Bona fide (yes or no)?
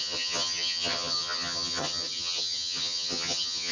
no